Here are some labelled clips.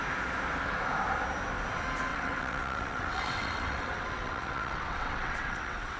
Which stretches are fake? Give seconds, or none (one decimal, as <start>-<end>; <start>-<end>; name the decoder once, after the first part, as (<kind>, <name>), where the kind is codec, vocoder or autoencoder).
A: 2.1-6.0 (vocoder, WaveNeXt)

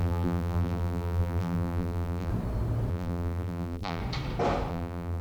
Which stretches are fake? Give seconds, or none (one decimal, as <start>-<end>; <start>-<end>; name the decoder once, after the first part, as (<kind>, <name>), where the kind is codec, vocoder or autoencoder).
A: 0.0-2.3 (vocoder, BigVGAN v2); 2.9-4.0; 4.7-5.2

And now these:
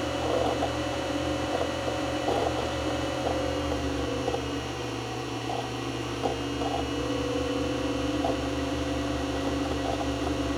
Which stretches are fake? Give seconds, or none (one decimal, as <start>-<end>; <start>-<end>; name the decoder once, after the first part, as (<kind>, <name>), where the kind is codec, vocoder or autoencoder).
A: 0.0-6.3 (vocoder, BigVGAN v2); 7.0-10.6

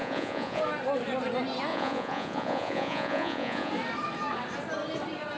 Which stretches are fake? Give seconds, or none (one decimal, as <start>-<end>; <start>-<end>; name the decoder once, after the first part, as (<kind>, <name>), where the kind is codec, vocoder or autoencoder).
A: 0.0-0.6 (vocoder, Vocos); 1.7-3.7